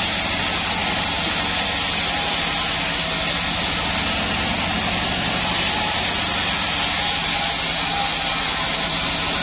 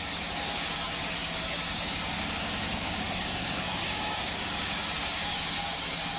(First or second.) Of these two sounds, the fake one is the second